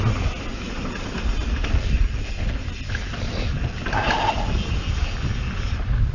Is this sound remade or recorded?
recorded